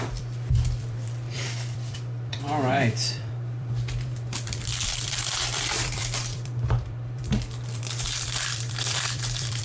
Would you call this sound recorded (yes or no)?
no